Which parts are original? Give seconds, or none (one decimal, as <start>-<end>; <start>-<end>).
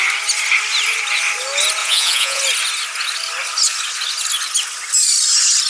0.0-1.8; 2.4-5.7